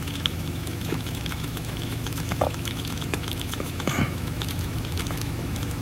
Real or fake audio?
fake